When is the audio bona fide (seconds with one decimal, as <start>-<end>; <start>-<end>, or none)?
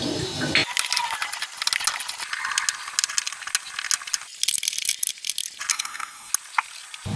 0.0-5.7; 6.3-7.2